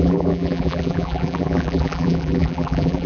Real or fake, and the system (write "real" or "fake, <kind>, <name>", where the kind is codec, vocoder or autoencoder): fake, vocoder, BigVGAN v2